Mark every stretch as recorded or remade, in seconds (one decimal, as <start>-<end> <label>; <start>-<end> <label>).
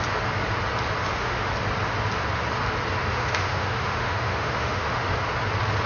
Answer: 0.0-1.0 recorded; 1.0-1.5 remade; 1.5-3.0 recorded; 3.0-5.1 remade; 5.1-5.9 recorded